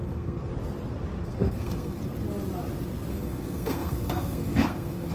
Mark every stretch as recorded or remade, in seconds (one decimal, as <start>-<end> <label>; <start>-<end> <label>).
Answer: 0.0-0.5 remade; 0.5-1.2 recorded; 1.2-2.0 remade; 2.0-3.1 recorded; 3.1-5.1 remade

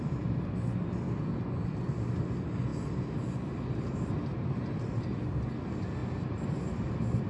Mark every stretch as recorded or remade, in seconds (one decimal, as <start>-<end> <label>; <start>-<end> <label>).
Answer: 0.0-7.3 recorded